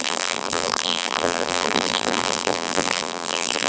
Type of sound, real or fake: fake